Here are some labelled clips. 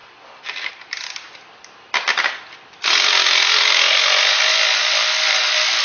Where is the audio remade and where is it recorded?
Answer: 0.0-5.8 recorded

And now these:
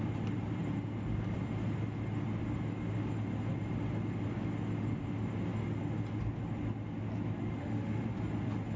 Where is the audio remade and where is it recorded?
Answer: 0.0-7.4 recorded; 7.4-8.0 remade; 8.0-8.8 recorded

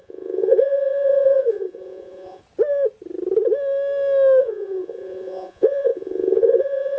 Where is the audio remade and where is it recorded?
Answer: 0.0-2.4 remade; 2.4-4.4 recorded; 4.4-7.0 remade

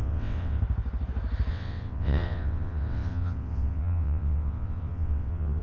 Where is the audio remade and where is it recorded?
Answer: 0.0-0.6 remade; 0.6-1.5 recorded; 1.5-5.6 remade

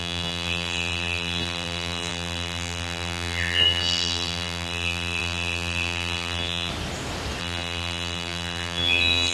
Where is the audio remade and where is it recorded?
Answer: 0.0-6.7 remade; 6.7-7.4 recorded; 7.4-9.3 remade

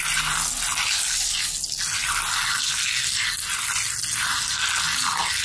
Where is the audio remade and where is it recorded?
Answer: 0.0-5.4 recorded

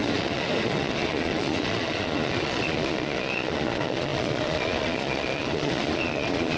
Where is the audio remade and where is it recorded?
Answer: 0.0-6.6 remade

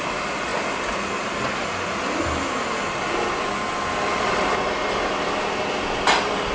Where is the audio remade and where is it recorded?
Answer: 0.0-6.5 recorded